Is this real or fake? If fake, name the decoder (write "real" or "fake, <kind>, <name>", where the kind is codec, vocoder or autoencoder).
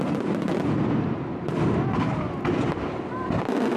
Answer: real